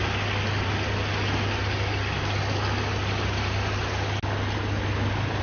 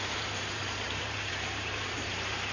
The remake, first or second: second